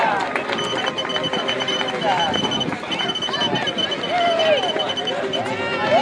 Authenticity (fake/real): real